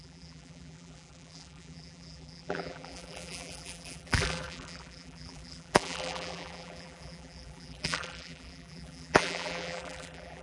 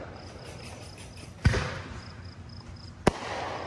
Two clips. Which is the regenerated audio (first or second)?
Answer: first